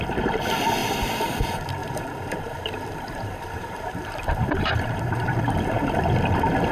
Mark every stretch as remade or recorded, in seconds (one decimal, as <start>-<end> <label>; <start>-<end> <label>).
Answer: 0.0-0.8 recorded; 0.8-1.3 remade; 1.3-1.8 recorded; 1.8-5.8 remade; 5.8-6.7 recorded